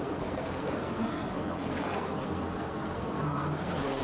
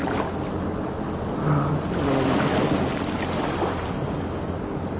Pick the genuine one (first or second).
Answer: second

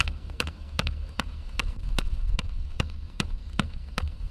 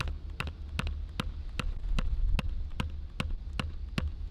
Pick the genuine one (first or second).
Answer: second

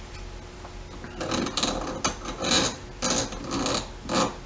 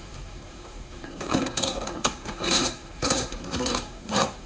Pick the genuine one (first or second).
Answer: first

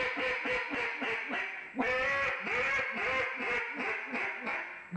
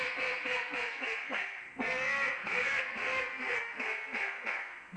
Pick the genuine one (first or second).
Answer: first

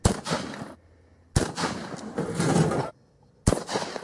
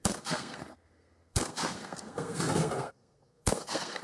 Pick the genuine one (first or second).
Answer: first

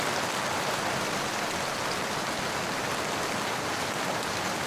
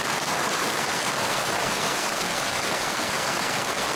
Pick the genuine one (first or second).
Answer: first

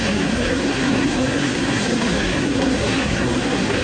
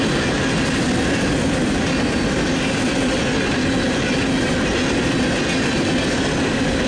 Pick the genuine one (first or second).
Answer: second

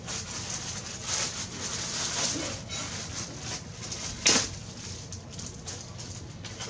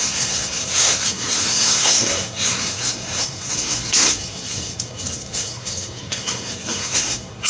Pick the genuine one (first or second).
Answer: first